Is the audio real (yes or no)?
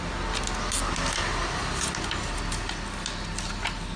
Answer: yes